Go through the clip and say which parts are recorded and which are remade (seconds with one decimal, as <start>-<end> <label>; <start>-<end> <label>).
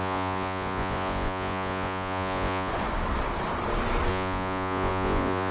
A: 0.0-2.7 remade; 2.7-4.1 recorded; 4.1-5.5 remade